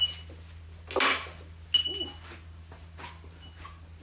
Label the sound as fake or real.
real